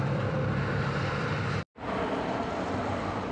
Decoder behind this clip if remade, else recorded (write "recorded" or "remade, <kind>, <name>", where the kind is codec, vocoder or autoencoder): remade, vocoder, BigVGAN v2